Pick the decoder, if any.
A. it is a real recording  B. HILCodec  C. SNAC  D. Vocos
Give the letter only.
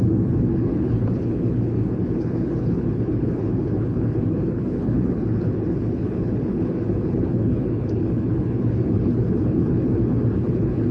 B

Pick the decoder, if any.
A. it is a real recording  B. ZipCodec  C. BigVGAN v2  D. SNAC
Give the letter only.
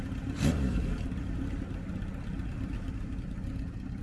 C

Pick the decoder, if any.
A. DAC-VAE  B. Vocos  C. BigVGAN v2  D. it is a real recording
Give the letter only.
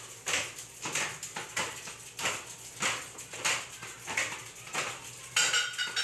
D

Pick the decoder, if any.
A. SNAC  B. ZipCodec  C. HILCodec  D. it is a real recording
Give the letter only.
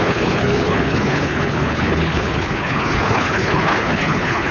C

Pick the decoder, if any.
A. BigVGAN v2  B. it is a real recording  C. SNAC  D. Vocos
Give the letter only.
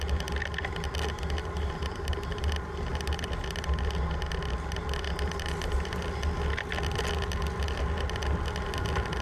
B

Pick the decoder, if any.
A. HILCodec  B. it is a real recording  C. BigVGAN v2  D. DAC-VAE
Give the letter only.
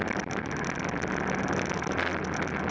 B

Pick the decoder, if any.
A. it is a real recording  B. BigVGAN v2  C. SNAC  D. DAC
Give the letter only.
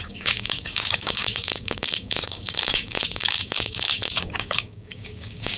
D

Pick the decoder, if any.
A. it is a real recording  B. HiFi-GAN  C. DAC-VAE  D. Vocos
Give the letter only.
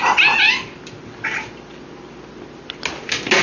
A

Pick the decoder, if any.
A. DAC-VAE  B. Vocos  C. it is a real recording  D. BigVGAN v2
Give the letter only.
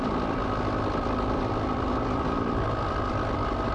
D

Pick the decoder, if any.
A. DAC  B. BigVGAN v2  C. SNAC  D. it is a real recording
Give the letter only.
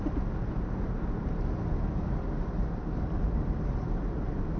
D